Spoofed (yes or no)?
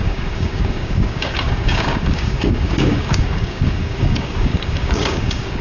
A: yes